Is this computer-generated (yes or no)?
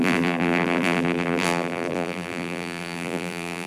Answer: yes